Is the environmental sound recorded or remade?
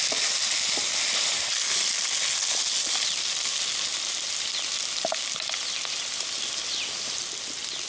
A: recorded